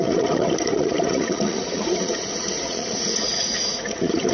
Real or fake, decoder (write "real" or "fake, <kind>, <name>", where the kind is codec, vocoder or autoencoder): fake, vocoder, Vocos